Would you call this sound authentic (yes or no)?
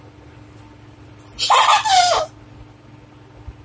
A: yes